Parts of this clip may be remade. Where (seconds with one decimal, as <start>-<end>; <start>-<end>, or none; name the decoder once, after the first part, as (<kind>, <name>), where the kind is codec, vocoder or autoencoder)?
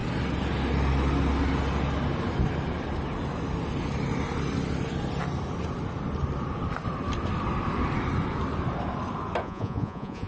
9.4-10.3 (vocoder, Vocos)